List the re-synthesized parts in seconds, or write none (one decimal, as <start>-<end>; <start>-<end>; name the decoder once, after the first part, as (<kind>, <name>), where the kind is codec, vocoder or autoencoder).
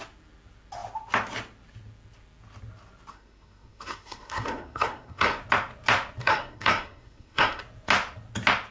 3.1-5.4 (codec, SNAC); 6.2-7.6